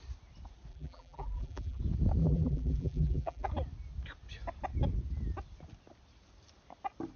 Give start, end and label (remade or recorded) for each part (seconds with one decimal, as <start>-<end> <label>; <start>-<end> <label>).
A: 0.0-0.7 recorded; 0.7-1.8 remade; 1.8-2.2 recorded; 2.2-3.5 remade; 3.5-7.2 recorded